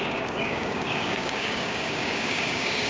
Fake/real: fake